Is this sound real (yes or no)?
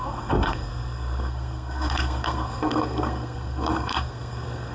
no